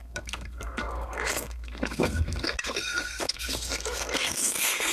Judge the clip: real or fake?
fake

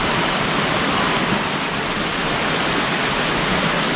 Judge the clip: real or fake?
real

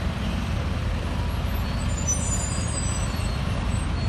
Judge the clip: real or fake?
real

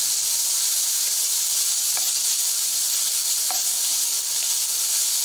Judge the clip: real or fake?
real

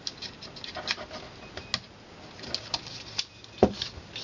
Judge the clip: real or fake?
real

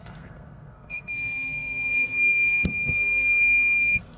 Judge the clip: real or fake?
fake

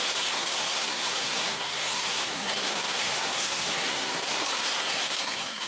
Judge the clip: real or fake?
fake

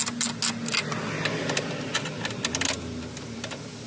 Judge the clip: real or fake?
real